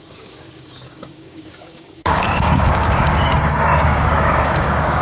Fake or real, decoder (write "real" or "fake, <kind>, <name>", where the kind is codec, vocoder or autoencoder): fake, codec, DAC